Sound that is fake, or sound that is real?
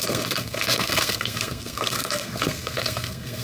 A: fake